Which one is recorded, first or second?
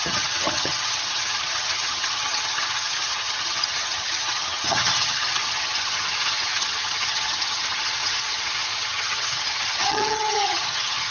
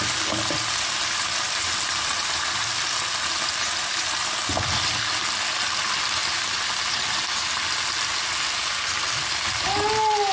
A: second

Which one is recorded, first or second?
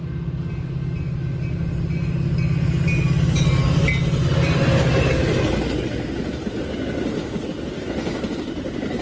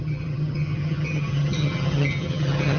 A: first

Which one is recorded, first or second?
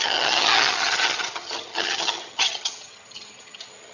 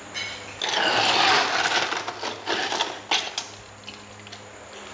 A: second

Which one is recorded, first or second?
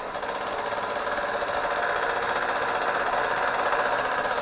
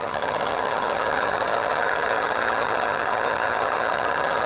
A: first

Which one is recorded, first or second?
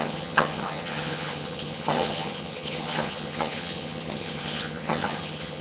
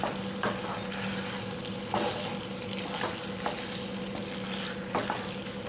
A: second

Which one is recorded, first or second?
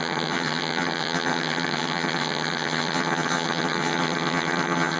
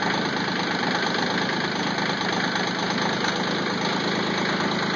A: second